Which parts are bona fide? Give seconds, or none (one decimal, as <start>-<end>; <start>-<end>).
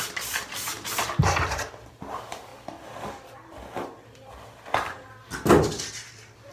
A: 2.5-6.5